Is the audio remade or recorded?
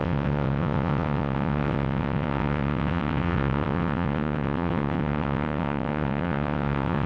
remade